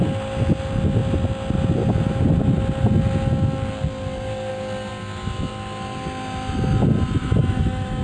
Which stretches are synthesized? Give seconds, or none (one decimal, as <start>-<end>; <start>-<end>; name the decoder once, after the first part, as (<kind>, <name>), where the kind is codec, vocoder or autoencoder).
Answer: 7.2-8.0 (autoencoder, DAC-VAE)